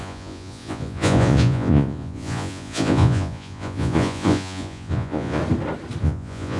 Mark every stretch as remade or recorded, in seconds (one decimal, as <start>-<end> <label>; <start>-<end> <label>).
0.0-5.4 remade; 5.4-6.0 recorded; 6.0-6.6 remade